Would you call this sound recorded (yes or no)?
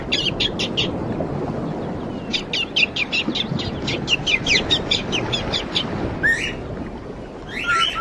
yes